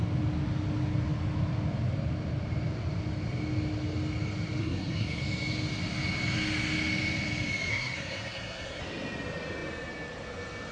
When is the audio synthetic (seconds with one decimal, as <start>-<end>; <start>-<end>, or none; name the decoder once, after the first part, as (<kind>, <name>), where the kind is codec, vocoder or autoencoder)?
4.6-5.2 (codec, SNAC); 7.7-8.8